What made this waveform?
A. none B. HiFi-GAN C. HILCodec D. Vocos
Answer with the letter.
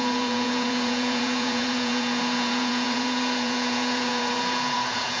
D